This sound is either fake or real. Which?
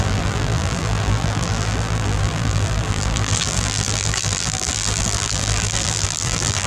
fake